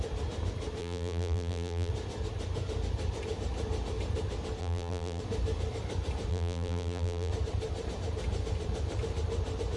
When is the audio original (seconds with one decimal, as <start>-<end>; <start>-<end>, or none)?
0.0-0.8; 1.9-4.6; 5.2-6.3; 7.3-9.8